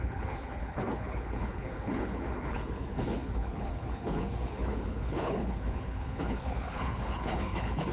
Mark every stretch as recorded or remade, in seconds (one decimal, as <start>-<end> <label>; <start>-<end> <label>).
0.0-7.9 remade